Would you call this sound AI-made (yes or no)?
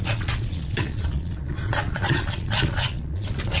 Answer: yes